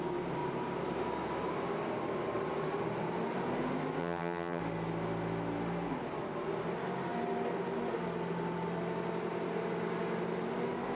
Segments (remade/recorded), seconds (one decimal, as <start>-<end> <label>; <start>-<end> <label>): 0.0-4.0 recorded; 4.0-4.6 remade; 4.6-11.0 recorded

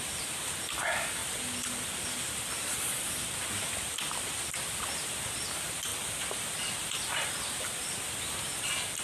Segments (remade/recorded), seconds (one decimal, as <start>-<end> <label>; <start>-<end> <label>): 0.0-1.2 recorded; 1.2-5.3 remade; 5.3-5.9 recorded; 5.9-8.5 remade; 8.5-9.0 recorded

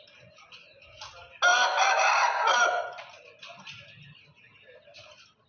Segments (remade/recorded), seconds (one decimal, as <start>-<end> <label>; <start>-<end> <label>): 0.0-5.5 recorded

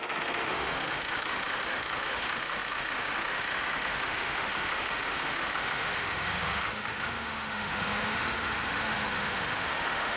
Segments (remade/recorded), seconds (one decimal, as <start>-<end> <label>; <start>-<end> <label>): 0.0-10.2 remade